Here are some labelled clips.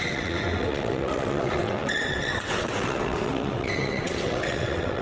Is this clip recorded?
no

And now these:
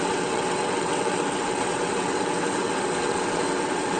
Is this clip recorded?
no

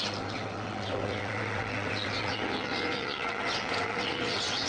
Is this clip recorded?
no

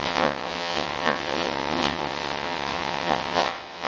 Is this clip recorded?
no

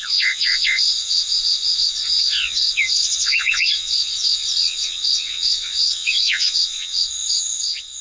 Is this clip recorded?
no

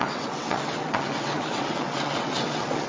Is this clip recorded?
no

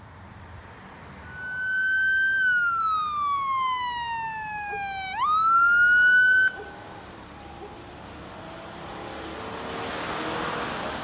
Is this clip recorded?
yes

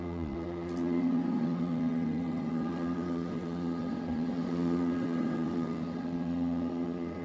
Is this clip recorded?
no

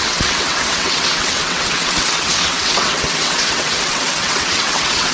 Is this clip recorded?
no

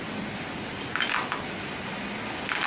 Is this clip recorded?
yes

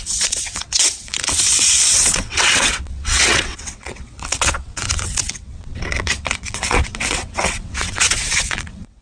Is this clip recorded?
no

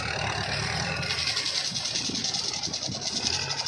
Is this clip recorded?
yes